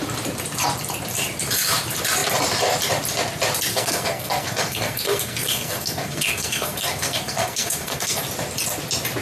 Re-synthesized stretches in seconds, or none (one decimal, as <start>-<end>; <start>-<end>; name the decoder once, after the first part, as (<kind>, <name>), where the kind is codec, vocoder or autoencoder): 3.7-8.2 (codec, SNAC)